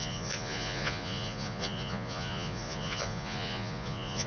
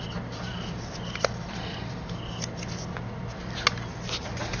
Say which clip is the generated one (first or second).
first